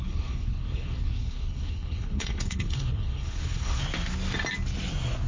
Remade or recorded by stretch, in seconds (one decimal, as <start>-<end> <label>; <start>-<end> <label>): 0.0-3.8 remade; 3.8-5.3 recorded